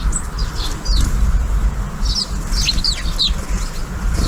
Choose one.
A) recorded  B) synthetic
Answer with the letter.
A